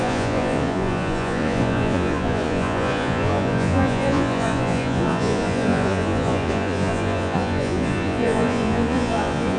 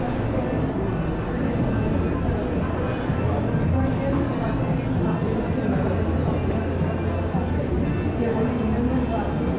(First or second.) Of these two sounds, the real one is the second